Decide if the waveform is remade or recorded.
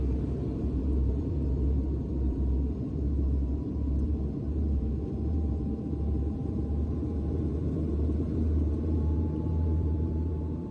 remade